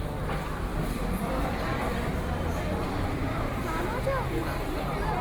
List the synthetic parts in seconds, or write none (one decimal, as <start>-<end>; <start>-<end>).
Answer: 0.7-3.8